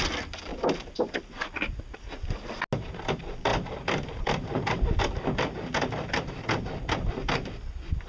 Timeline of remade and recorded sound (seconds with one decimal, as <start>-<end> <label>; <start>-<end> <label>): 0.0-8.1 recorded